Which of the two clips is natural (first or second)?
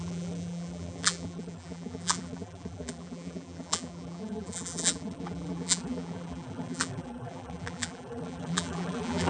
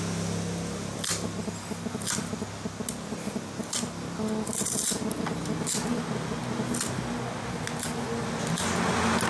second